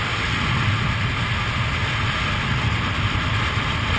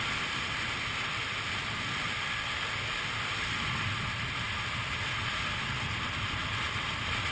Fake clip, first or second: second